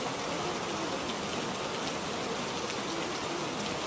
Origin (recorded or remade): recorded